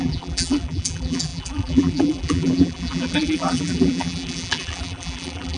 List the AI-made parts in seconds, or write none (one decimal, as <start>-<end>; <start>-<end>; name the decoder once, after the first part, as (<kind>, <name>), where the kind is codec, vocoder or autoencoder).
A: 0.0-5.6 (vocoder, BigVGAN v2)